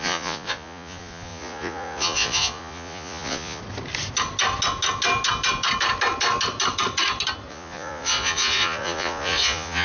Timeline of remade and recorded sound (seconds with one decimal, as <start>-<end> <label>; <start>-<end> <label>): 0.0-3.6 remade; 3.6-7.5 recorded; 7.5-9.8 remade